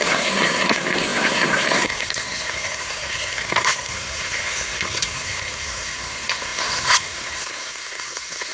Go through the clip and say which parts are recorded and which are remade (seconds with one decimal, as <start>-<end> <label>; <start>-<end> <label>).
0.0-8.5 remade